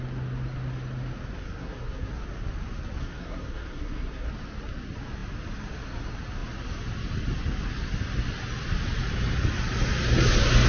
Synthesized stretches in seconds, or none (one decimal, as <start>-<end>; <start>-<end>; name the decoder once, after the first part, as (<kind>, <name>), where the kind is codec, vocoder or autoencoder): 1.4-2.1 (codec, SNAC); 3.0-4.3